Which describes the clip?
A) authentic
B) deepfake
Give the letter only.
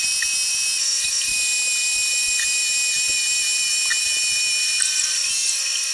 A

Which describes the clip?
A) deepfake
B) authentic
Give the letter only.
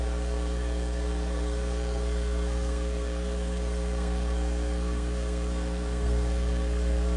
A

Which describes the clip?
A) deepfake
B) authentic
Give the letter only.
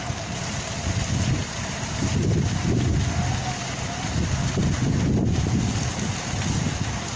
B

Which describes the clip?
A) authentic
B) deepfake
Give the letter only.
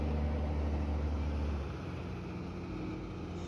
A